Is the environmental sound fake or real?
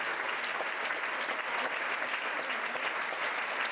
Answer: real